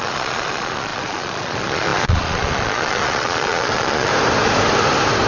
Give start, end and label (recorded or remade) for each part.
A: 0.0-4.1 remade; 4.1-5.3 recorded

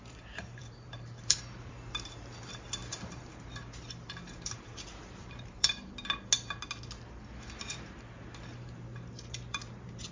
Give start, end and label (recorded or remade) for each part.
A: 0.0-0.6 recorded; 0.6-1.7 remade; 1.7-2.8 recorded; 2.8-5.9 remade; 5.9-8.5 recorded; 8.5-10.1 remade

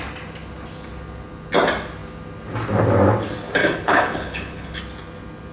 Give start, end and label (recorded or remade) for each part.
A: 0.0-3.6 recorded; 3.6-4.8 remade; 4.8-5.5 recorded

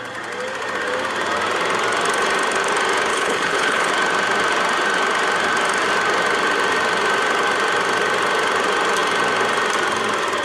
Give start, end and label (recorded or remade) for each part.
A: 0.0-3.1 recorded; 3.1-3.9 remade; 3.9-10.4 recorded

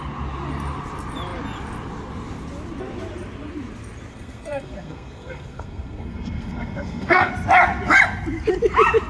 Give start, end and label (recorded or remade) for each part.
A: 0.0-4.1 recorded; 4.1-7.3 remade; 7.3-9.1 recorded

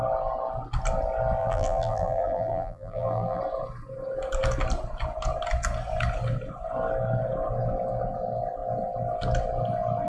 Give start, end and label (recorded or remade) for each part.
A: 0.0-1.4 recorded; 1.4-3.4 remade; 3.4-10.1 recorded

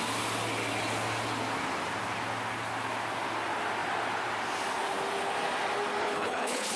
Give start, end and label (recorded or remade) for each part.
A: 0.0-6.0 recorded; 6.0-6.8 remade